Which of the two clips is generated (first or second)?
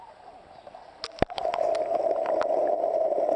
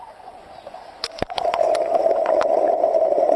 second